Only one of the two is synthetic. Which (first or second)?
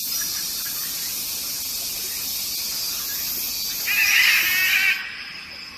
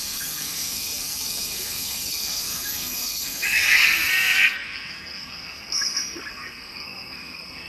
second